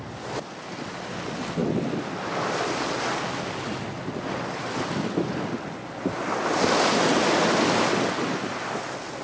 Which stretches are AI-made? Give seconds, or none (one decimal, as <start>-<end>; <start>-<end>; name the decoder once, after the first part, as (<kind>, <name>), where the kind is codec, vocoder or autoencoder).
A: none

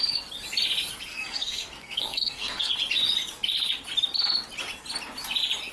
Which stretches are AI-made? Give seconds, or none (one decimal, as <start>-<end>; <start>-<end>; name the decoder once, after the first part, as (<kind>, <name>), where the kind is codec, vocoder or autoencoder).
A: 1.1-2.7 (codec, SNAC)

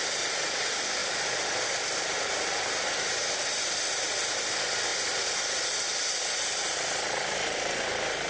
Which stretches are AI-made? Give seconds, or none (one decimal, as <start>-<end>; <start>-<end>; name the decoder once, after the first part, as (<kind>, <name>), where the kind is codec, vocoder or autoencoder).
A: none

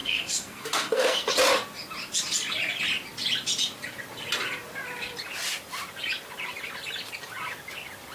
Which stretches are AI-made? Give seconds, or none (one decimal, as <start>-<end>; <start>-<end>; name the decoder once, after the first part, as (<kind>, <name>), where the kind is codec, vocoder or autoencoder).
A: 0.0-1.3 (codec, SNAC)